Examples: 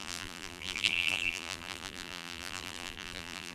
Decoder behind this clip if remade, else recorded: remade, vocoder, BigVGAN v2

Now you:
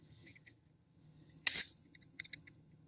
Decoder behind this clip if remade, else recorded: remade, vocoder, HiFi-GAN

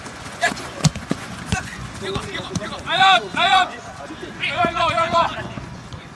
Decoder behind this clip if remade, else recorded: remade, vocoder, Vocos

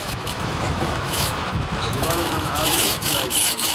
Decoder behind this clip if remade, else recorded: remade, autoencoder, DAC-VAE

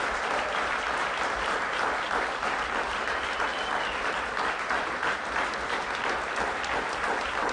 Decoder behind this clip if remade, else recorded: remade, vocoder, BigVGAN v2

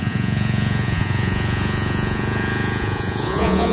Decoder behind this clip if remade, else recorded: remade, vocoder, Vocos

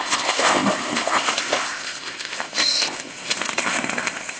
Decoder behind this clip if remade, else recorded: remade, codec, ZipCodec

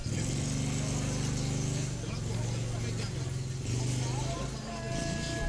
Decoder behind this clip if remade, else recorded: recorded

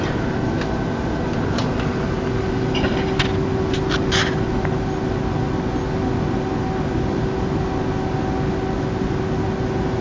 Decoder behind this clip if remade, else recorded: recorded